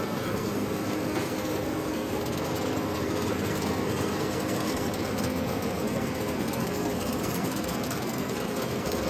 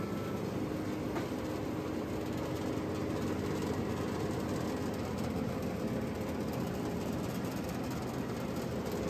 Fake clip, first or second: first